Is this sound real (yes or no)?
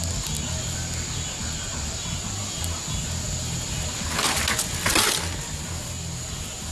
yes